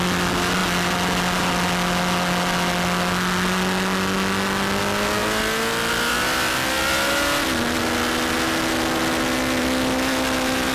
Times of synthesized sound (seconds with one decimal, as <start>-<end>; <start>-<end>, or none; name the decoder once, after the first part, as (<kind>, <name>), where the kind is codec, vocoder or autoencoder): none